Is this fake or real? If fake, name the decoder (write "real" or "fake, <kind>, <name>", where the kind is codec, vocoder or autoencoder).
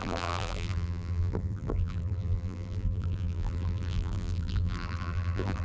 fake, vocoder, BigVGAN v2